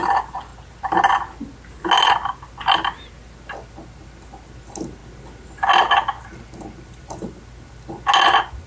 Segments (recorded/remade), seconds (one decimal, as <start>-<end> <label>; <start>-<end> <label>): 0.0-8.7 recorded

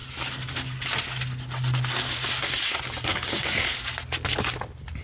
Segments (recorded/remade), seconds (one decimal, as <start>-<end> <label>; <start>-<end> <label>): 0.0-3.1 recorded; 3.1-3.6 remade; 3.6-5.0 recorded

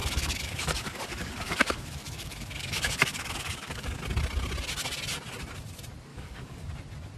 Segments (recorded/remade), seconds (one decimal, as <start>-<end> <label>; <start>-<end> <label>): 0.0-4.0 remade; 4.0-6.1 recorded; 6.1-6.7 remade; 6.7-7.2 recorded

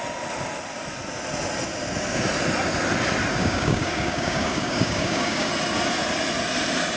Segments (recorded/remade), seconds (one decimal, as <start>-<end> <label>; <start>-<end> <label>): 0.0-3.4 recorded; 3.4-5.5 remade; 5.5-7.0 recorded

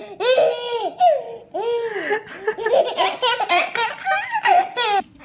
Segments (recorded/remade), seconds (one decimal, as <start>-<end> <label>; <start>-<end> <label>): 0.0-5.2 recorded